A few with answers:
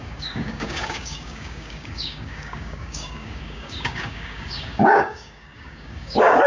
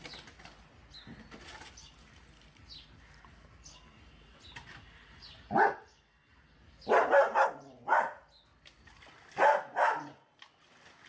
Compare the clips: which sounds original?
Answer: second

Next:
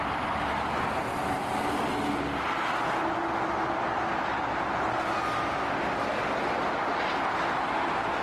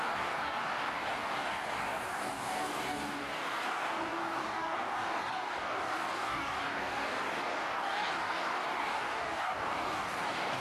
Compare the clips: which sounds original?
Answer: first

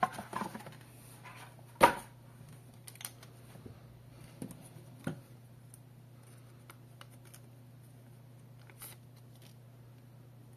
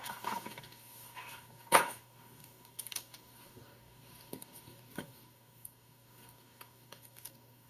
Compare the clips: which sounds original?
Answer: first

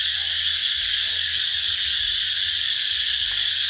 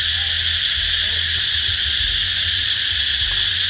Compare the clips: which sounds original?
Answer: second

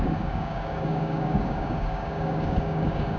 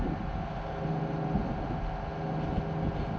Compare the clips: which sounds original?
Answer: second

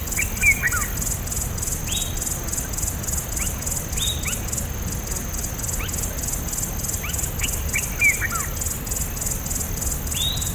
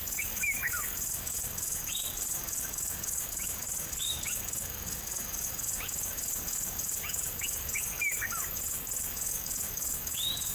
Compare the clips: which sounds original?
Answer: first